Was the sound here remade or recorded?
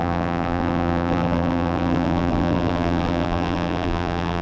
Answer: remade